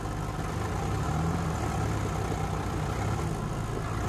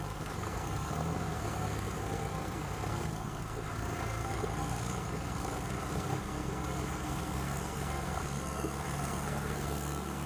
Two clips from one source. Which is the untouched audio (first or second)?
first